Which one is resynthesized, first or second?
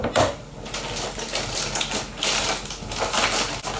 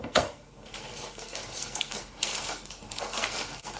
second